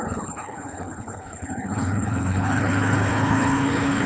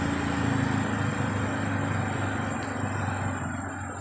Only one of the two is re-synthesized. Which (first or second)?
first